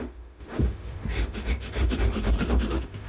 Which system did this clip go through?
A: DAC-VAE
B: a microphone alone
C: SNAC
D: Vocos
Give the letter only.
A